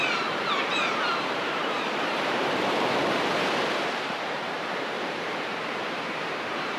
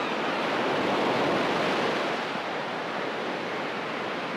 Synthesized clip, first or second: first